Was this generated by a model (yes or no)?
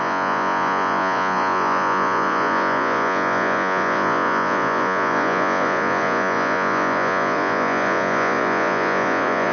yes